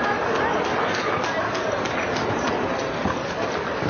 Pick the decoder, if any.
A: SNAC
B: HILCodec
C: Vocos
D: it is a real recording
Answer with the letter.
D